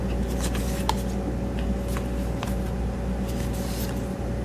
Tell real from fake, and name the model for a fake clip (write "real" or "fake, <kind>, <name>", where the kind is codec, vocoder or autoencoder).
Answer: real